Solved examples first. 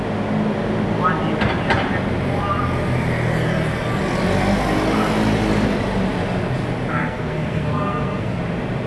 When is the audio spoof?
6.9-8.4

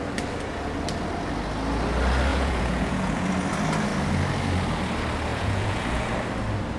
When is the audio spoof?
2.3-3.3; 5.3-6.1

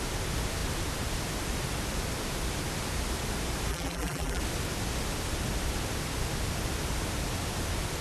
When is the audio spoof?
3.7-4.4

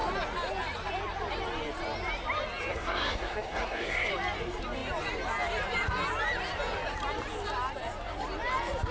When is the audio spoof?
2.7-4.1

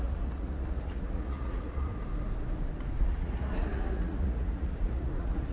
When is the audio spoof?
0.0-1.9; 3.0-5.5